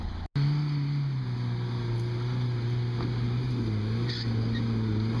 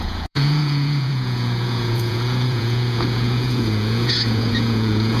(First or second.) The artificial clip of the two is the second